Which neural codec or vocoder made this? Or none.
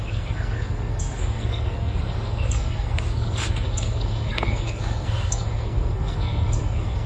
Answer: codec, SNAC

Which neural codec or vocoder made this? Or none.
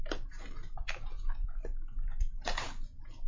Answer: vocoder, BigVGAN v2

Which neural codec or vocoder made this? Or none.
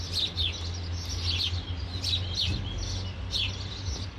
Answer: none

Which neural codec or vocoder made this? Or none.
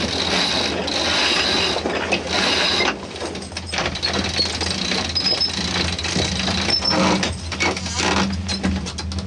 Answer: none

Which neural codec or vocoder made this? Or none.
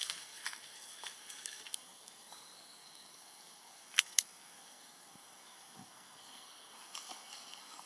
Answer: codec, SNAC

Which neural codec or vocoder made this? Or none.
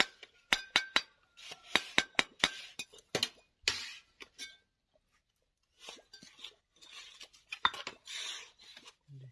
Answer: none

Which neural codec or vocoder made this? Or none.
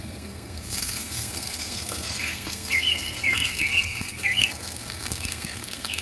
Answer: codec, SNAC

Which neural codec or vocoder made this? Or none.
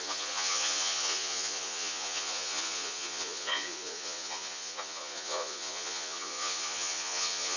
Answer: vocoder, Vocos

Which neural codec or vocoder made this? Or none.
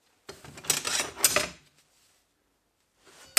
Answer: none